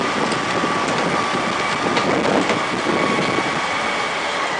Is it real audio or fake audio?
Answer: real